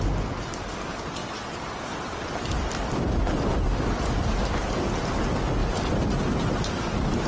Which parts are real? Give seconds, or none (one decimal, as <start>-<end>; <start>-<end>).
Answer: 0.0-7.3